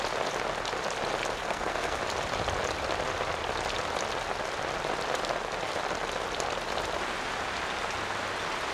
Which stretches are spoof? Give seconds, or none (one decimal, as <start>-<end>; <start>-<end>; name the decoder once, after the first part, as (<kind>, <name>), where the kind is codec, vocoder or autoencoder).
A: 1.4-2.0 (codec, SNAC)